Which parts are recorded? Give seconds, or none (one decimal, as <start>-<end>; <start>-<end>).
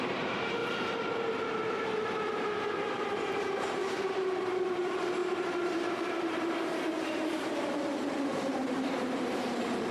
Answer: 0.6-1.5